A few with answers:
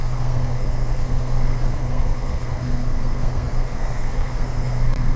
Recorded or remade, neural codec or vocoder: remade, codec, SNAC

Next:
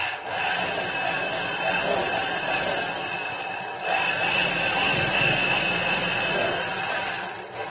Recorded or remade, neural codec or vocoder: recorded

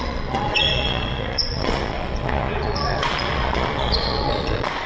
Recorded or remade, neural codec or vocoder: remade, vocoder, Vocos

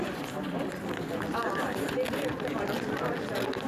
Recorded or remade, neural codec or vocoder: recorded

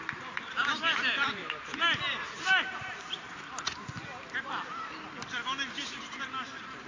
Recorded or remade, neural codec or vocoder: recorded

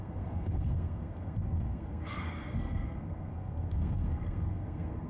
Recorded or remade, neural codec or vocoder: remade, codec, SNAC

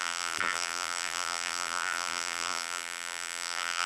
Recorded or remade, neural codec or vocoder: remade, vocoder, BigVGAN v2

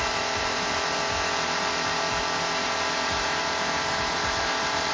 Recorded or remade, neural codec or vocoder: remade, vocoder, BigVGAN v2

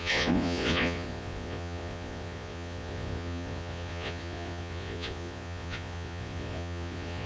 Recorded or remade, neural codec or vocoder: remade, vocoder, Vocos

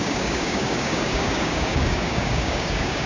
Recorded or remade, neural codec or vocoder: remade, codec, DAC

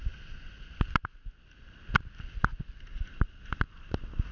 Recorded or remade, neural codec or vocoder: recorded